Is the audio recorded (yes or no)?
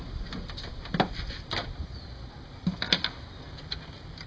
yes